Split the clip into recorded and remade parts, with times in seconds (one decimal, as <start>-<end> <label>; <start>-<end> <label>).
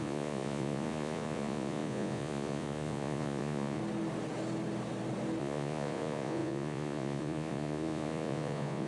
0.0-3.8 remade; 3.8-5.4 recorded; 5.4-8.9 remade